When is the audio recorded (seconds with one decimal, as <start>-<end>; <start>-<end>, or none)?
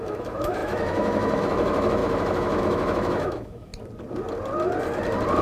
3.7-5.4